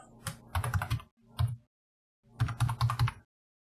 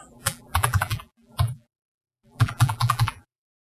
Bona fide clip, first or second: first